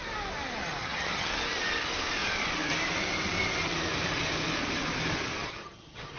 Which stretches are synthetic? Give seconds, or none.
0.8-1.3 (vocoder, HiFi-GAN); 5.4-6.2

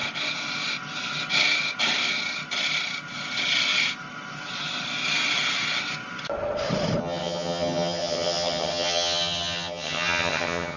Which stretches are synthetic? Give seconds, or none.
7.0-10.8 (vocoder, HiFi-GAN)

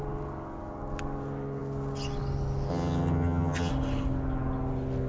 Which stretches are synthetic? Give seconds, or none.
2.7-3.7 (vocoder, HiFi-GAN)

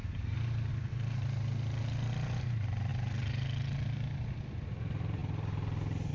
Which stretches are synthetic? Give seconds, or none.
none

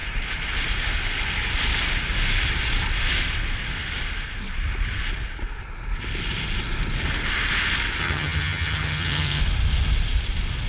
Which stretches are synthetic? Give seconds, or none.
8.0-9.4 (vocoder, HiFi-GAN)

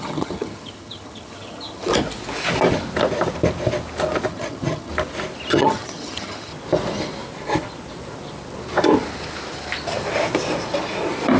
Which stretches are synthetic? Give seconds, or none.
0.0-1.9 (vocoder, HiFi-GAN); 4.3-4.9; 5.5-6.5

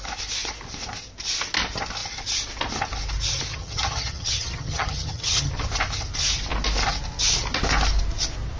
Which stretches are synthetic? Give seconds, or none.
3.5-5.5 (vocoder, HiFi-GAN)

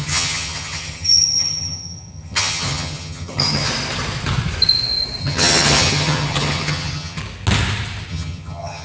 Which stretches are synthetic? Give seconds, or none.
0.0-3.7 (vocoder, HiFi-GAN); 5.2-7.2; 8.1-8.8